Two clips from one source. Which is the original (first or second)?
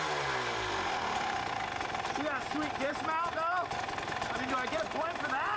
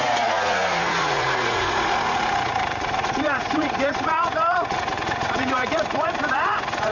first